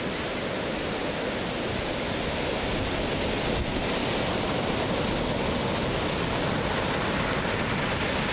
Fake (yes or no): no